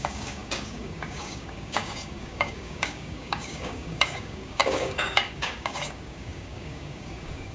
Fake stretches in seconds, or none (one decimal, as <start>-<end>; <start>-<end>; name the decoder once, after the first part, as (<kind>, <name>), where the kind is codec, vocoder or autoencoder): 0.0-7.5 (codec, DAC)